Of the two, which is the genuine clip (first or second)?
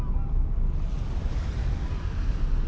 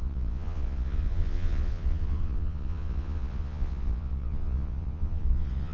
first